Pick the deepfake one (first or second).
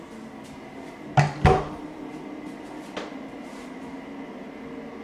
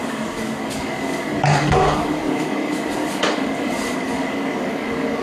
second